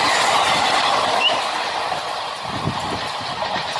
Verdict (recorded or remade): recorded